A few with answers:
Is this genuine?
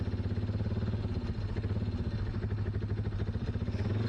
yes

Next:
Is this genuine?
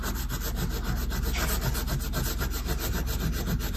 yes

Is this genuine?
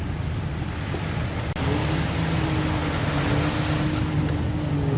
yes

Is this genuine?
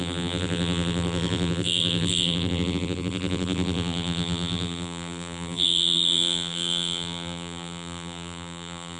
no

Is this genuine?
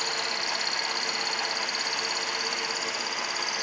yes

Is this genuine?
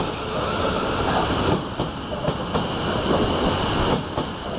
yes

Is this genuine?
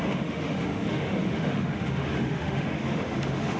no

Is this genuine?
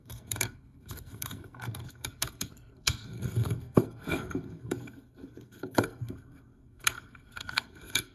no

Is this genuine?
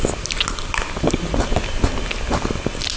yes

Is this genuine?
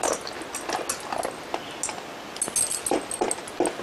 yes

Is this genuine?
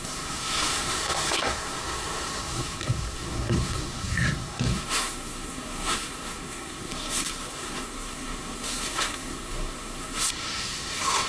no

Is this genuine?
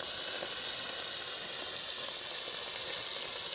yes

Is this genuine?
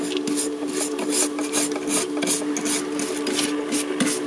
yes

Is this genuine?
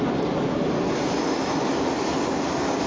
yes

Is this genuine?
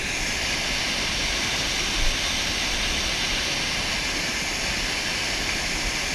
yes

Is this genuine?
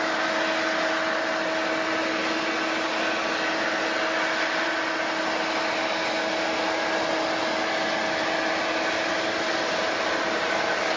yes